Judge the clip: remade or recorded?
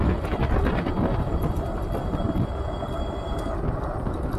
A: recorded